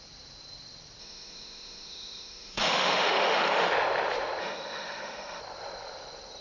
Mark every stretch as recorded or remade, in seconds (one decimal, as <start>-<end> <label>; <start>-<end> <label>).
0.0-1.0 recorded; 1.0-3.7 remade; 3.7-4.4 recorded; 4.4-5.4 remade; 5.4-6.4 recorded